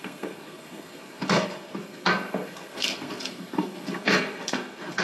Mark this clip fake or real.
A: fake